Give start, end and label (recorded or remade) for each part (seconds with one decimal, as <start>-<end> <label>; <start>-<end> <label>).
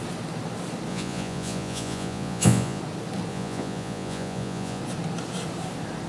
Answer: 0.0-0.9 recorded; 0.9-2.8 remade; 2.8-3.3 recorded; 3.3-4.8 remade; 4.8-6.1 recorded